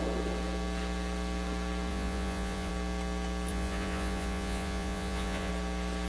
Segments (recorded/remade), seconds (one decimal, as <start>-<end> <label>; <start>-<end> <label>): 0.0-1.9 recorded; 1.9-2.7 remade; 2.7-3.5 recorded; 3.5-5.5 remade; 5.5-6.1 recorded